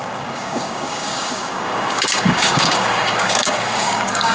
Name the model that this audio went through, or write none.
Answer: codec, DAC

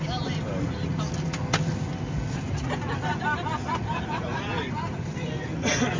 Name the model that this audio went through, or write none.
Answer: none